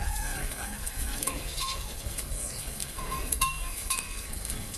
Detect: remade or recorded remade